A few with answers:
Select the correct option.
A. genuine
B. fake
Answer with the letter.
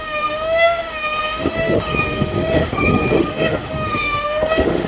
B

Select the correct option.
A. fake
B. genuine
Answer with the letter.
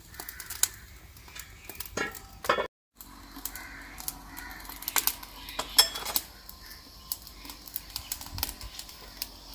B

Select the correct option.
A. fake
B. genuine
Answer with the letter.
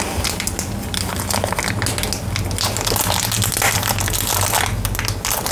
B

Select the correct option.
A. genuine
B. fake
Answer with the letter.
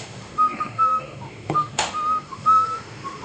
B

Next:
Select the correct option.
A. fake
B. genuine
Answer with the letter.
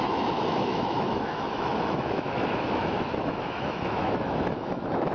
A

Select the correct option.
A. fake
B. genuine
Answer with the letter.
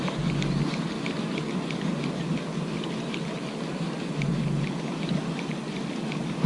B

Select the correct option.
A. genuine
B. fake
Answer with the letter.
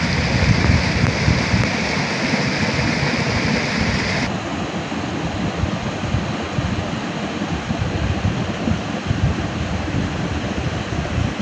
A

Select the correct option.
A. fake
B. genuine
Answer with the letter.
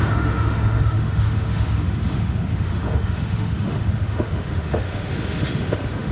A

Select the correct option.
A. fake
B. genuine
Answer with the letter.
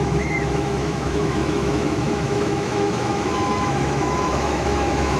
A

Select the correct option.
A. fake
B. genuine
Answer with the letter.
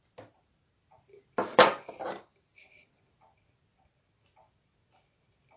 B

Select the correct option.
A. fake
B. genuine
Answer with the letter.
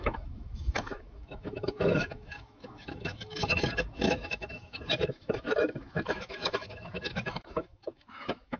A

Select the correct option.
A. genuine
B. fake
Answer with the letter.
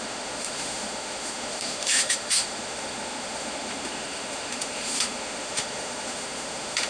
B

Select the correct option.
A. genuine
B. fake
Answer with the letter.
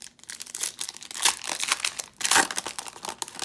A